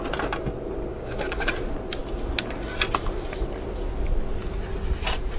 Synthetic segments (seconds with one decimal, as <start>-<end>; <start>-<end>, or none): 0.9-1.5